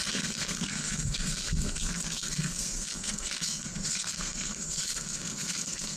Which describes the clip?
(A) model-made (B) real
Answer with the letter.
A